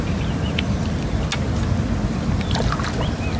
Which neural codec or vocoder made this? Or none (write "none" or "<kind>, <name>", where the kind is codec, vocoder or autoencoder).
none